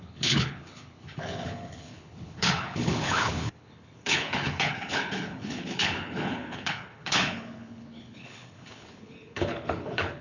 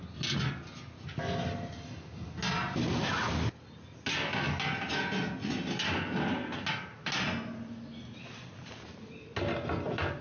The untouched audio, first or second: second